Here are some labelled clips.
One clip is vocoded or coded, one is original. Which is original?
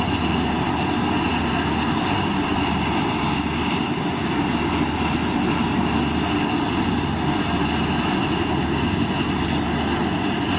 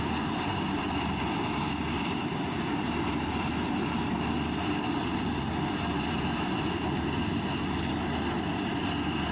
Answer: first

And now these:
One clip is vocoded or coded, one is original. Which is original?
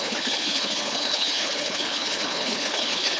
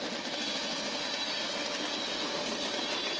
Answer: second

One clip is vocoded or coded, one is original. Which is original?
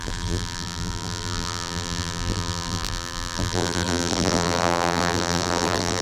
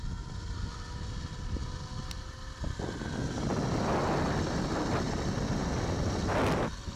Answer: second